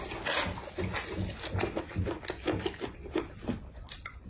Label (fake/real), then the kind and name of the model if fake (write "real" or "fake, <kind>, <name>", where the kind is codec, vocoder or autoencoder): real